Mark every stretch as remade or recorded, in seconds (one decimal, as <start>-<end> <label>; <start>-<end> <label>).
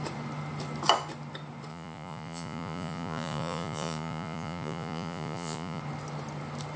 0.0-1.7 recorded; 1.7-5.8 remade; 5.8-6.8 recorded